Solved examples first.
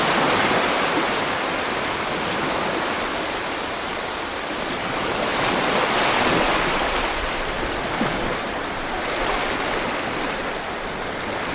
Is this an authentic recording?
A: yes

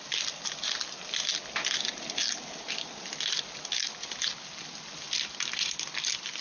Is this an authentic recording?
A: yes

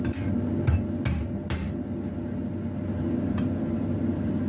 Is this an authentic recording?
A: yes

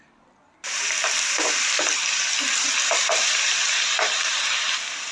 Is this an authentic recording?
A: yes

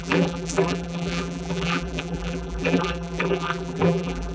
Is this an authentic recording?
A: no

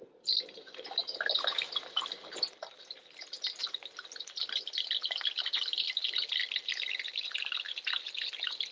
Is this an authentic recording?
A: yes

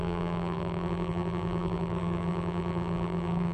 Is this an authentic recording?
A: no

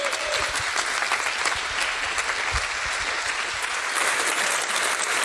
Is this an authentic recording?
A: yes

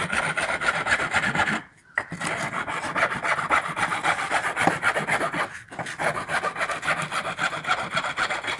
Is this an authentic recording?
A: yes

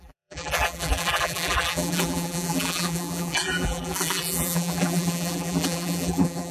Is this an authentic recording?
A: no